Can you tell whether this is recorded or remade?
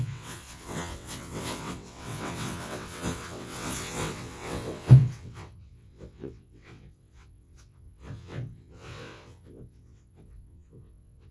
remade